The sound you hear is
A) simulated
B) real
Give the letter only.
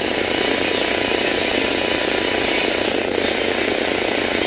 B